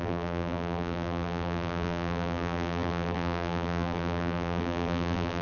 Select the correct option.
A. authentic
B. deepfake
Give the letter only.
B